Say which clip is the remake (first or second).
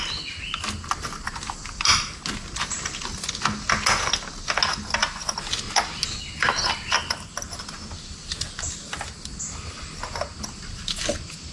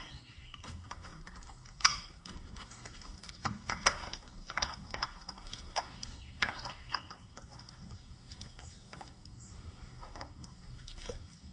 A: second